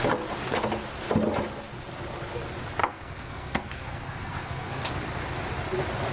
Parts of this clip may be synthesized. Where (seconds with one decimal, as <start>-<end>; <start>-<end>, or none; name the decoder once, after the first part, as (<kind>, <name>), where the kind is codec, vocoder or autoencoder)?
2.8-4.9 (codec, SNAC)